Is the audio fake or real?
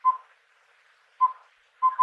real